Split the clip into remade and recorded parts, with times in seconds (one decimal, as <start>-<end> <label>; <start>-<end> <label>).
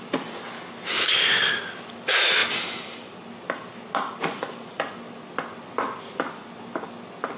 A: 0.0-7.4 recorded